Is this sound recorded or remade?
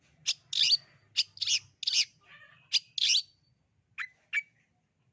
recorded